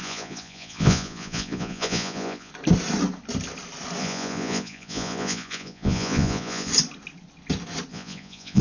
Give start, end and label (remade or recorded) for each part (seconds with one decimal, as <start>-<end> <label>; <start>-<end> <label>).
0.0-2.5 remade; 2.5-4.0 recorded; 4.0-6.7 remade; 6.7-7.9 recorded; 7.9-8.6 remade